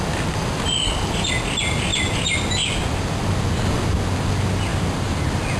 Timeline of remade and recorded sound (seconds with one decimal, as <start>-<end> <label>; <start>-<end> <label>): 0.0-4.7 recorded; 4.7-5.6 remade